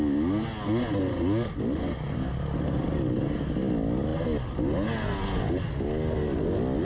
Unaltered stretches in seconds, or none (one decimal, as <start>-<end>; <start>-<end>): 0.0-6.8